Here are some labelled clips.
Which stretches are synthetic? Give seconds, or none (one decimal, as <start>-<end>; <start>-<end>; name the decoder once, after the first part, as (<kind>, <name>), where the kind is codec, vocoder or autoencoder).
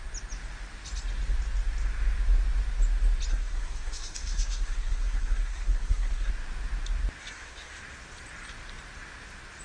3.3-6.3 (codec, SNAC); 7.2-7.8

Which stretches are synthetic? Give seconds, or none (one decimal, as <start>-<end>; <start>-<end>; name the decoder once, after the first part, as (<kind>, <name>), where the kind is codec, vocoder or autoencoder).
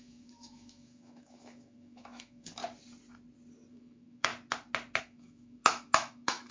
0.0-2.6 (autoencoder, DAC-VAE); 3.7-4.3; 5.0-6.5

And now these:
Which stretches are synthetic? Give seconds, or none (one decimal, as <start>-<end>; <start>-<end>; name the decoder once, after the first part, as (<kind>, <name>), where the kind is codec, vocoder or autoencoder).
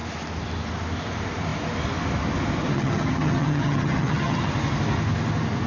2.7-4.5 (vocoder, HiFi-GAN)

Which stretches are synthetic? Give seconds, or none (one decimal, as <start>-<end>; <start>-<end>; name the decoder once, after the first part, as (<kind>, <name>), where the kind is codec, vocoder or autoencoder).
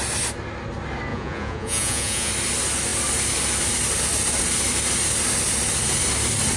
1.1-2.3 (vocoder, Vocos)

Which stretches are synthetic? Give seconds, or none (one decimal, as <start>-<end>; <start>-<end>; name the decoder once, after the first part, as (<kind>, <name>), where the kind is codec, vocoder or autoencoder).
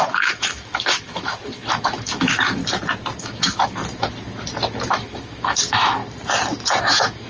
0.0-2.6 (autoencoder, DAC-VAE); 3.2-3.8; 4.9-6.0; 6.8-7.3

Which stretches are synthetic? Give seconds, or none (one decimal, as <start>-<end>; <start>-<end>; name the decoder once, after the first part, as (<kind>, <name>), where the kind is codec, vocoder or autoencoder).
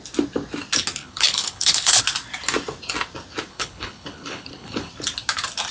1.0-2.0 (codec, HILCodec); 3.5-4.9